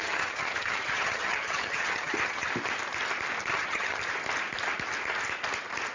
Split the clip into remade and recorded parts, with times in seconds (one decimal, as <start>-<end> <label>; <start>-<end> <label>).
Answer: 0.0-2.5 remade; 2.5-3.5 recorded; 3.5-4.0 remade; 4.0-5.9 recorded